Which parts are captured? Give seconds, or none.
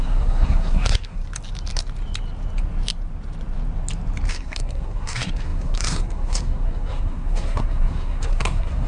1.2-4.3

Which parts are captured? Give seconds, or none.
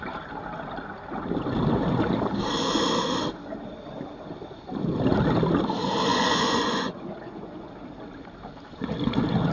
0.0-6.1; 7.7-9.5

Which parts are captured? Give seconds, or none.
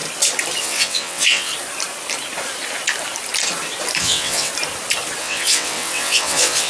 0.0-0.6; 1.5-4.0; 4.5-5.2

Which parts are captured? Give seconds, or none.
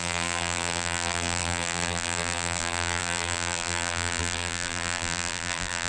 none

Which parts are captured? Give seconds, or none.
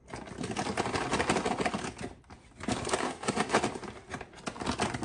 0.0-3.0; 3.6-5.0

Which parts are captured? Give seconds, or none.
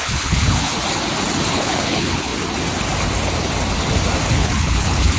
0.7-1.5; 2.3-4.3